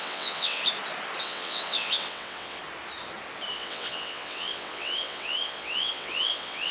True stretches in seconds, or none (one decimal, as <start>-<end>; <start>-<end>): 0.6-1.2; 2.6-3.5